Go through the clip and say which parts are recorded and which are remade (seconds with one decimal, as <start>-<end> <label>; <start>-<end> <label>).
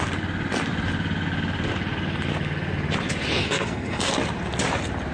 0.0-3.4 recorded; 3.4-4.1 remade; 4.1-5.1 recorded